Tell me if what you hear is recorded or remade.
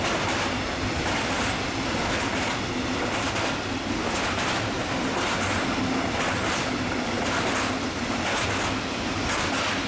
recorded